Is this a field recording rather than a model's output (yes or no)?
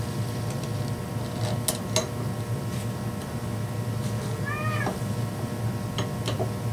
yes